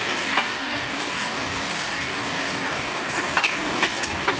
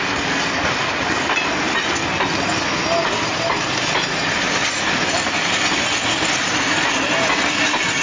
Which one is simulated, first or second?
first